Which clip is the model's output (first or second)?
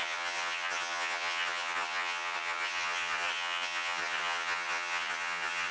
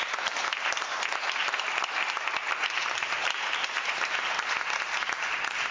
first